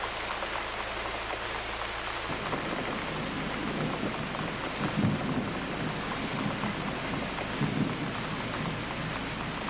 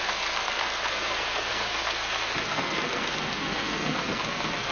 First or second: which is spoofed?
second